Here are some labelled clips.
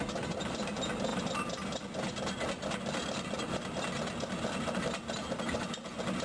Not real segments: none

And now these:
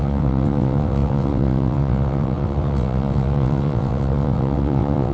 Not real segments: 0.0-5.1 (vocoder, WaveNeXt)

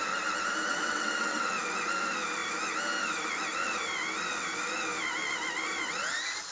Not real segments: 0.7-1.4 (vocoder, WaveNeXt)

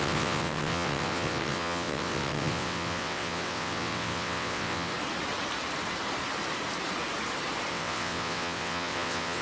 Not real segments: 0.0-4.9 (vocoder, WaveNeXt); 7.7-9.4

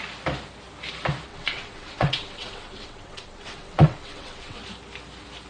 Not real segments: 1.3-4.6 (vocoder, WaveNeXt)

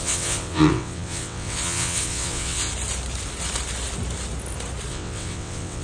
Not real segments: 0.0-2.7 (vocoder, WaveNeXt); 4.9-5.8

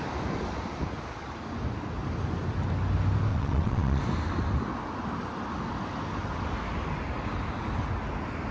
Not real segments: 3.3-4.0 (vocoder, WaveNeXt)

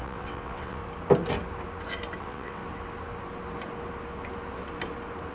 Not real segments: 0.0-0.8 (vocoder, WaveNeXt); 2.2-2.6